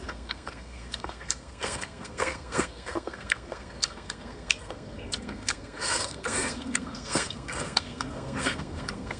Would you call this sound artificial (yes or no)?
yes